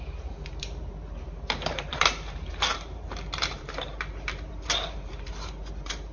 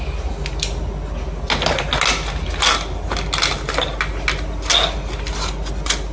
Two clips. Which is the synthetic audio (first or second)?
first